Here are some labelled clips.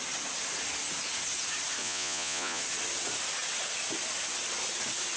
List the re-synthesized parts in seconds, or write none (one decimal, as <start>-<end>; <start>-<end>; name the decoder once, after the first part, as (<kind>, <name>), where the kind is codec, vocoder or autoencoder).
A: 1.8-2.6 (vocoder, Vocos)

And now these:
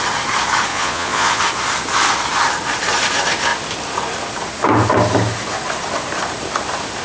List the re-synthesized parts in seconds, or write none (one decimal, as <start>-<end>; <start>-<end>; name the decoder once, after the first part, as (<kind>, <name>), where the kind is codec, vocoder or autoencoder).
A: 0.7-1.4 (vocoder, Vocos)

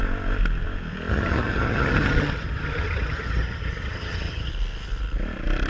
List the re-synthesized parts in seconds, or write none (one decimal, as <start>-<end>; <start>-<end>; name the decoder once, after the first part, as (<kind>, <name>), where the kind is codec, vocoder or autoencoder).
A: 1.1-4.5 (vocoder, HiFi-GAN)